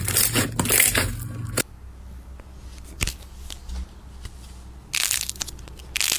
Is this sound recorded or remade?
recorded